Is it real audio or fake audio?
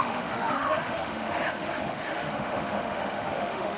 fake